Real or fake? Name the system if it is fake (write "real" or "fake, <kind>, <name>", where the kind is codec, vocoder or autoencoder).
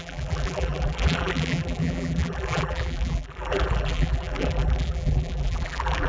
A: fake, vocoder, BigVGAN v2